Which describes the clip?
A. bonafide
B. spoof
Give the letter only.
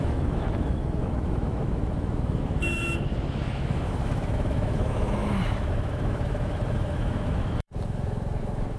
B